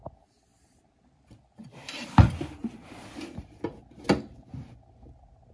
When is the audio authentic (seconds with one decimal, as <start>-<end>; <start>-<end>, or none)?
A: 0.0-0.5; 3.8-5.5